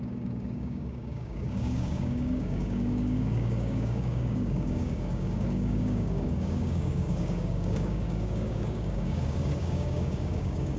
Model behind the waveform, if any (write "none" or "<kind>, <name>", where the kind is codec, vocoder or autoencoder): codec, DAC